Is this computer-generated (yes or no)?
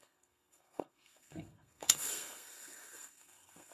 yes